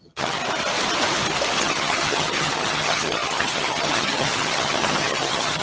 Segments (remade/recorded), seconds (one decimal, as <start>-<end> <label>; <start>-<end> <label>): 0.0-0.4 remade; 0.4-1.6 recorded; 1.6-5.6 remade